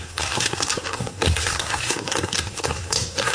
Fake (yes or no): yes